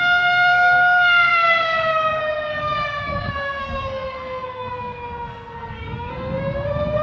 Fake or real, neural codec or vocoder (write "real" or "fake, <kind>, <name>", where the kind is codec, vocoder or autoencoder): fake, codec, SNAC